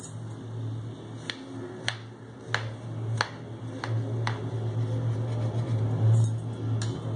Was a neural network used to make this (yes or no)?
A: no